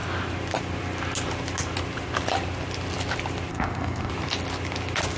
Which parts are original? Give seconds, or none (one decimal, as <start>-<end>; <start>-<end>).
0.0-3.5; 4.1-5.2